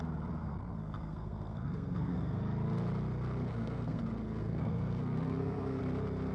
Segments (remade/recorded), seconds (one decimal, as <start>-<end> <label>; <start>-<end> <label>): 0.0-0.4 recorded; 0.4-2.4 remade; 2.4-3.5 recorded; 3.5-4.0 remade; 4.0-4.4 recorded; 4.4-5.8 remade; 5.8-6.3 recorded